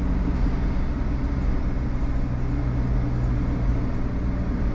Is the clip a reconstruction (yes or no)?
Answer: no